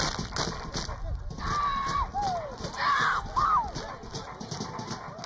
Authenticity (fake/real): real